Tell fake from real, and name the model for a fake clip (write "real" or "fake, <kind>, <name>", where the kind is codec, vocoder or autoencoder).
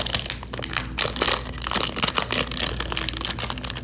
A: real